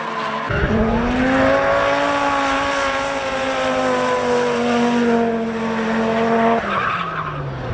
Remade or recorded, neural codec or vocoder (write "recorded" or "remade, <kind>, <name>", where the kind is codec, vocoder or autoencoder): recorded